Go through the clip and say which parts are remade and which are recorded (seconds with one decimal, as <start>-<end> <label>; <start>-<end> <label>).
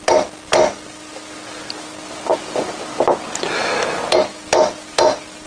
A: 0.0-5.5 recorded